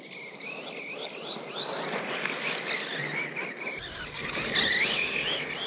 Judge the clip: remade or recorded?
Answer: recorded